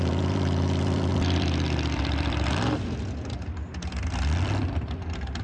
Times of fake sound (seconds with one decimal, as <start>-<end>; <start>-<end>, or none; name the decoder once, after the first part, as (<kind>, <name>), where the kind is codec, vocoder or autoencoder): 0.0-5.4 (vocoder, BigVGAN v2)